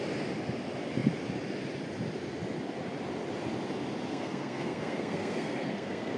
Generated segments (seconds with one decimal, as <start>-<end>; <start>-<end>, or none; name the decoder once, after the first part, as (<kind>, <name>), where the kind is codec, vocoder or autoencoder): 4.1-6.2 (codec, SNAC)